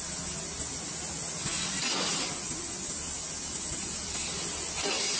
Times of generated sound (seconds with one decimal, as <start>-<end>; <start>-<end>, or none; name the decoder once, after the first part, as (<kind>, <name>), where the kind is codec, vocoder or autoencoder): none